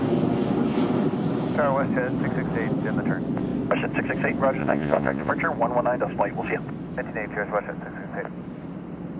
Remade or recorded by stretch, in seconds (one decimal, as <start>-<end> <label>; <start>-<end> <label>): 0.0-4.6 recorded; 4.6-5.3 remade; 5.3-9.2 recorded

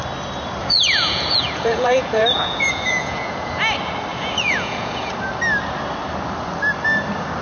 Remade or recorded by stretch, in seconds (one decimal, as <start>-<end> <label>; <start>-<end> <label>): 0.0-0.6 recorded; 0.6-3.6 remade; 3.6-4.1 recorded; 4.1-5.1 remade; 5.1-7.4 recorded

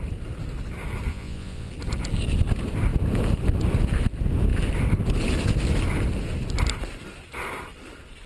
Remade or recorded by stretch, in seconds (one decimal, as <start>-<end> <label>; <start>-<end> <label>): 0.0-1.1 recorded; 1.1-1.7 remade; 1.7-8.3 recorded